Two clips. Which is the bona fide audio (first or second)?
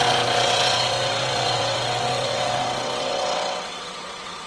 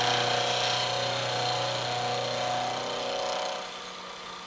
second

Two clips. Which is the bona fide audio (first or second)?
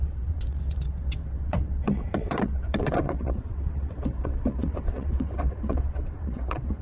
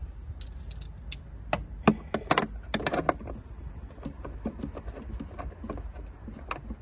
second